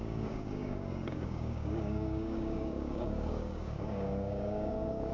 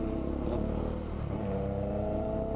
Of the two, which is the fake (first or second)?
first